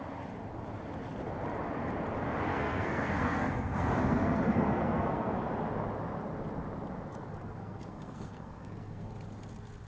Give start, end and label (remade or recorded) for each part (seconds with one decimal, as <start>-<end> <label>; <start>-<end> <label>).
0.0-2.5 recorded; 2.5-5.4 remade; 5.4-7.1 recorded; 7.1-9.1 remade; 9.1-9.9 recorded